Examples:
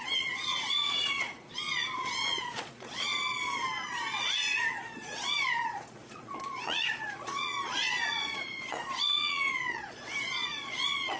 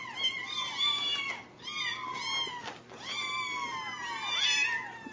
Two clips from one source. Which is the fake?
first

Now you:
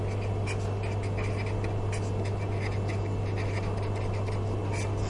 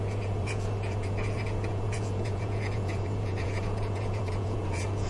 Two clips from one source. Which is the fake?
second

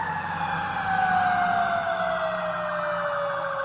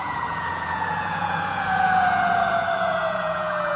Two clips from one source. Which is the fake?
second